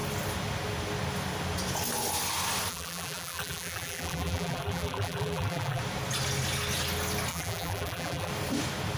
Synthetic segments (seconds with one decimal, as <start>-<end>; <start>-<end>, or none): 2.7-5.8; 7.3-8.3

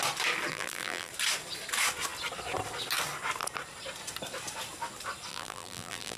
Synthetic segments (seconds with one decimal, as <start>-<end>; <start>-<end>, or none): 0.5-1.1; 5.3-6.2

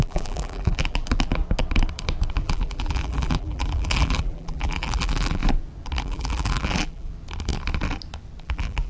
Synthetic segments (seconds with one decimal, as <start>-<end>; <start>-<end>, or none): 0.0-1.4; 2.3-5.4; 6.0-7.1; 8.4-8.9

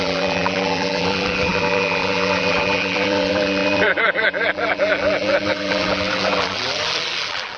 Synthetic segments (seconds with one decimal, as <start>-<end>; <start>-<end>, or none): 0.0-7.6